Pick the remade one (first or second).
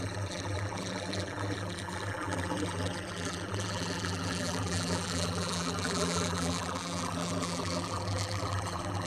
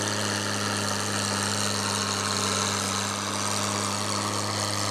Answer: first